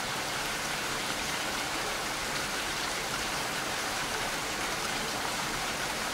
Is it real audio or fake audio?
fake